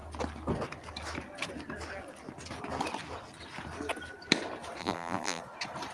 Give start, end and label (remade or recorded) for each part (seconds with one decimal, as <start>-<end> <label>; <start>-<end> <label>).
0.0-4.8 recorded; 4.8-5.4 remade; 5.4-5.9 recorded

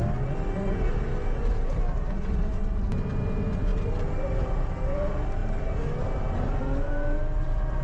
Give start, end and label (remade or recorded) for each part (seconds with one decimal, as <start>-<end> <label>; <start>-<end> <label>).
0.0-1.1 recorded; 1.1-2.9 remade; 2.9-3.7 recorded; 3.7-4.5 remade; 4.5-7.8 recorded

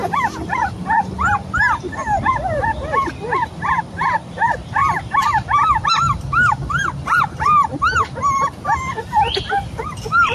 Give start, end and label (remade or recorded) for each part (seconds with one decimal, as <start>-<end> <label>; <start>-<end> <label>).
0.0-10.3 remade

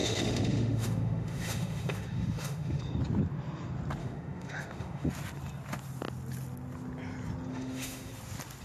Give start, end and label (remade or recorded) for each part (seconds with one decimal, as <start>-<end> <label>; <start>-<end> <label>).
0.0-2.8 remade; 2.8-4.0 recorded; 4.0-5.1 remade; 5.1-7.5 recorded; 7.5-8.1 remade; 8.1-8.6 recorded

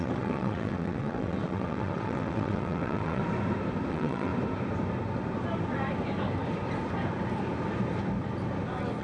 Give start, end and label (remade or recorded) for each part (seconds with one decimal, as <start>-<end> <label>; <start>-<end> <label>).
0.0-3.2 remade; 3.2-3.9 recorded; 3.9-4.3 remade; 4.3-9.0 recorded

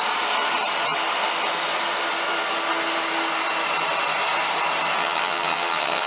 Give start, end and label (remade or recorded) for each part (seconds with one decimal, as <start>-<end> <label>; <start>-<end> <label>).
0.0-5.0 recorded; 5.0-6.1 remade